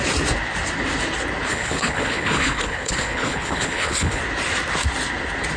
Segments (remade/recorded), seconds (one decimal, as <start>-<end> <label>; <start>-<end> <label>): 0.0-1.5 recorded; 1.5-4.2 remade; 4.2-5.6 recorded